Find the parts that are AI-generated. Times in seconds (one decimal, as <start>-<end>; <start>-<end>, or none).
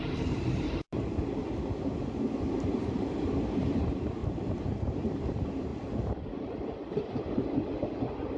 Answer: 0.0-1.4; 2.4-5.7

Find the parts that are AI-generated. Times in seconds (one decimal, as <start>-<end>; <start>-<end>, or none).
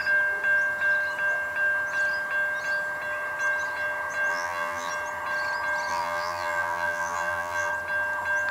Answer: 4.3-4.9; 5.9-7.7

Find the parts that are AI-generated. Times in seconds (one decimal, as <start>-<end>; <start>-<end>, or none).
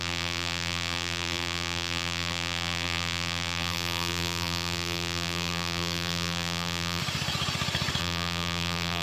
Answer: 0.0-7.0; 8.0-9.0